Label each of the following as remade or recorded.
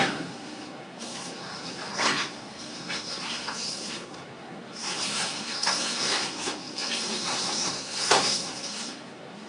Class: remade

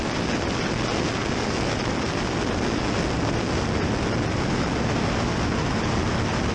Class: recorded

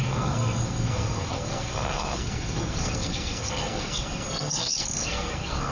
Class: remade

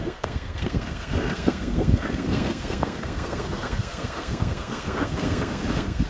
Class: remade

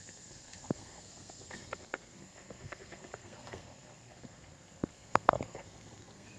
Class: remade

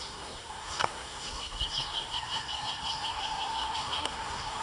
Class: remade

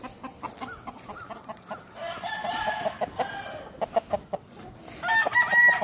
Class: recorded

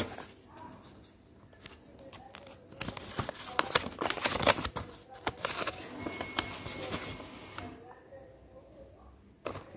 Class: recorded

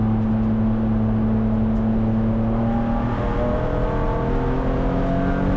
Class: recorded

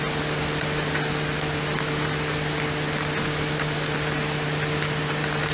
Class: recorded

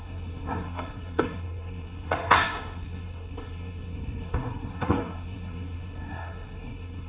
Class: remade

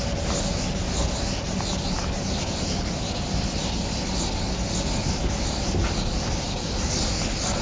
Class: recorded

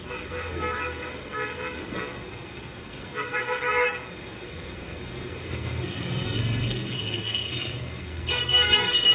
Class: remade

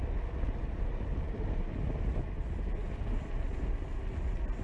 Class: recorded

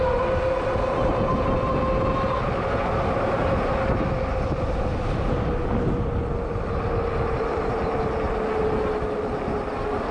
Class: recorded